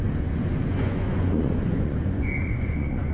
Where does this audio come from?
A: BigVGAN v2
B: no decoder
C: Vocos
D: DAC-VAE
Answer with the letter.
C